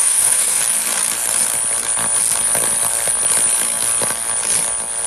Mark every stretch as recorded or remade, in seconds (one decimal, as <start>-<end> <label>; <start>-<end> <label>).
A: 0.0-0.6 remade; 0.6-5.1 recorded